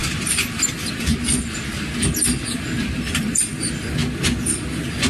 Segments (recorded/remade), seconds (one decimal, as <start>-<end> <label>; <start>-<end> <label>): 0.0-5.1 recorded